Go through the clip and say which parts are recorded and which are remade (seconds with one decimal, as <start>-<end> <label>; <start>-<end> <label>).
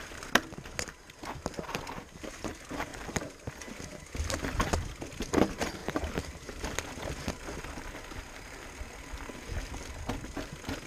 0.0-2.9 recorded; 2.9-3.5 remade; 3.5-5.8 recorded; 5.8-6.7 remade; 6.7-10.9 recorded